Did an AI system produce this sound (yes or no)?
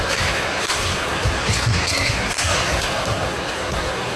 yes